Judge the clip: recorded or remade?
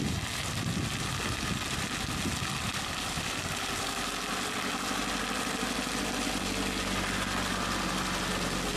recorded